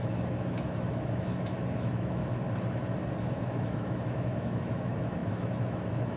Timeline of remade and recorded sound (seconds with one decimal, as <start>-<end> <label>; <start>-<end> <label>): 0.0-2.2 remade; 2.2-3.4 recorded; 3.4-6.2 remade